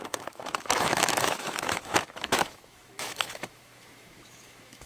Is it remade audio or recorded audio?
remade